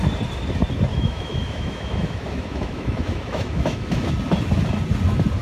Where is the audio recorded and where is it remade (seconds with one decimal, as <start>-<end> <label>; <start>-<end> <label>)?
0.0-0.9 recorded; 0.9-4.1 remade; 4.1-5.4 recorded